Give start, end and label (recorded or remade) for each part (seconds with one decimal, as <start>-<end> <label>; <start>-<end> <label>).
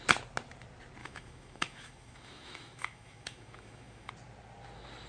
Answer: 0.0-1.0 recorded; 1.0-4.1 remade; 4.1-5.1 recorded